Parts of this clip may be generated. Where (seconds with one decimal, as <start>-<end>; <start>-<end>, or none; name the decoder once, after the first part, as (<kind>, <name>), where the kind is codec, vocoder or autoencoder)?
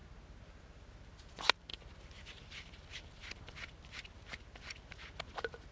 none